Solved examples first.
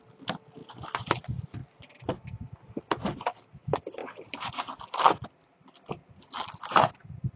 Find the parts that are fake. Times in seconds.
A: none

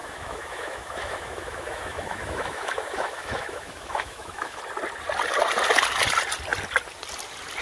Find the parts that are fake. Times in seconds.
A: 0.0-4.6 (autoencoder, DAC-VAE)

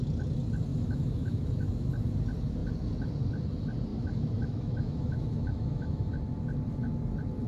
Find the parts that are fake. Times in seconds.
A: 0.7-1.9 (autoencoder, DAC-VAE); 3.9-6.1

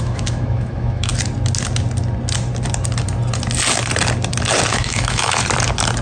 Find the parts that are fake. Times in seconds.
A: 0.0-1.1 (autoencoder, DAC-VAE); 4.7-5.4

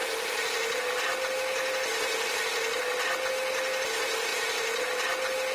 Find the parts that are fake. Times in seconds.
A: none

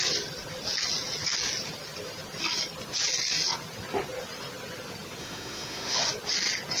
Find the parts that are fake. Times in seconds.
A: 5.2-6.0 (autoencoder, DAC-VAE)